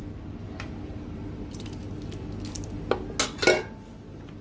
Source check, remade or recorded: recorded